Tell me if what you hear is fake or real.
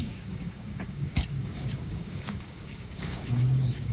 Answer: fake